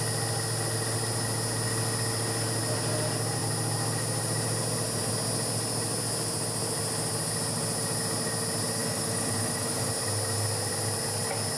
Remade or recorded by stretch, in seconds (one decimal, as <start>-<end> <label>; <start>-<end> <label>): 0.0-8.8 recorded; 8.8-9.9 remade; 9.9-11.6 recorded